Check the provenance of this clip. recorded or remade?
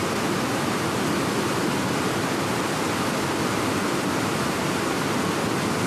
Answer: recorded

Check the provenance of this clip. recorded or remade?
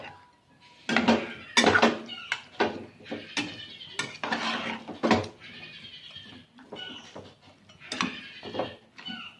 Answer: recorded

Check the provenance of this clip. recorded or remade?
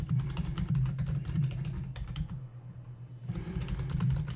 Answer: remade